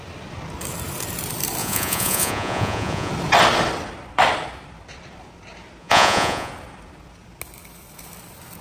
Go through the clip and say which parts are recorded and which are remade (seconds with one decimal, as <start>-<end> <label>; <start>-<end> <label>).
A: 0.0-1.6 recorded; 1.6-3.1 remade; 3.1-5.8 recorded; 5.8-6.5 remade; 6.5-8.6 recorded